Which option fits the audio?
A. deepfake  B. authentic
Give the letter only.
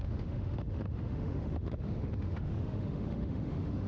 A